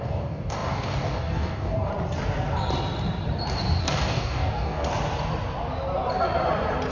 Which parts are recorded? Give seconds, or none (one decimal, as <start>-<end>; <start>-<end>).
1.9-3.8; 4.9-6.9